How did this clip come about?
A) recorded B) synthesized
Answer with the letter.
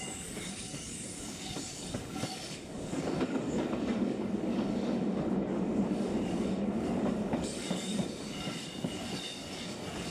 B